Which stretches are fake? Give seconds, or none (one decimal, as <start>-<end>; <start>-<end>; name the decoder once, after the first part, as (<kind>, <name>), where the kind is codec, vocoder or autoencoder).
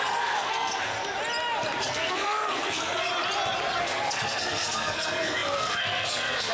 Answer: 0.0-0.9 (codec, SNAC); 1.8-3.1; 3.8-6.5